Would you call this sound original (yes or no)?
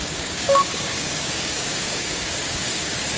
no